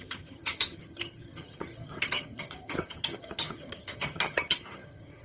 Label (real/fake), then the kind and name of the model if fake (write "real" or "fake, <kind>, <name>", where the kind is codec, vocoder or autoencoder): fake, vocoder, HiFi-GAN